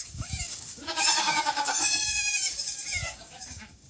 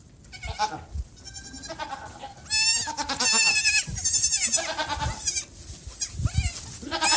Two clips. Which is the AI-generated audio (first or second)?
first